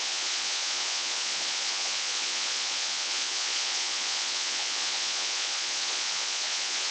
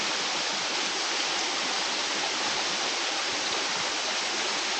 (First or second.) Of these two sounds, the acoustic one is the second